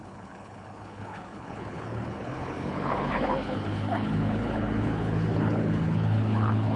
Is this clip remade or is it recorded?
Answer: remade